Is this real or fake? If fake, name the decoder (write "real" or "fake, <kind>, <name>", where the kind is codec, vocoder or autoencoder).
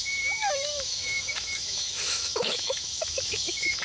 fake, autoencoder, DAC-VAE